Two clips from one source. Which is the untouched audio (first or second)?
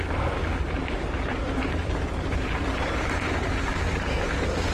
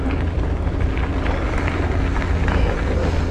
second